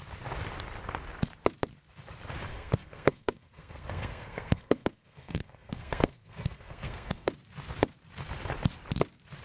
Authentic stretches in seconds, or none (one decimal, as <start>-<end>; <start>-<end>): 0.0-2.5; 7.3-9.4